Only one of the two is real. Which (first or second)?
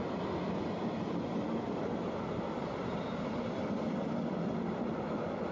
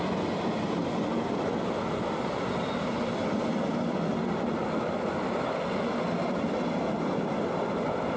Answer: second